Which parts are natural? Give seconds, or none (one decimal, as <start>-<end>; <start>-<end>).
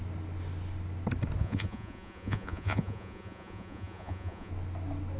0.0-1.4; 4.5-5.2